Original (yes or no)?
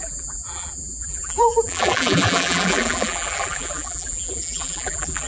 no